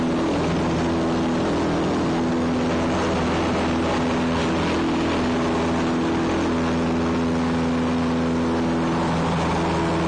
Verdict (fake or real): real